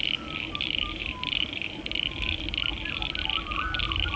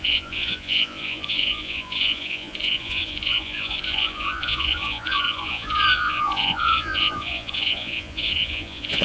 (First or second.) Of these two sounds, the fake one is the second